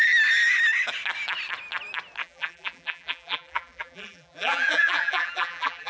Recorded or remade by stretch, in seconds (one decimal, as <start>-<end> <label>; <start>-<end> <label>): 0.0-2.2 recorded; 2.2-5.9 remade